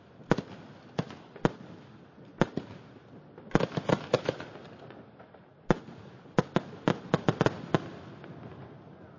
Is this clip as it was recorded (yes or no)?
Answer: yes